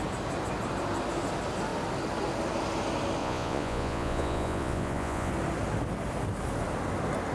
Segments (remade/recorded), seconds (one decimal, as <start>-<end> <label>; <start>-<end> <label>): 0.0-3.2 recorded; 3.2-5.3 remade; 5.3-7.3 recorded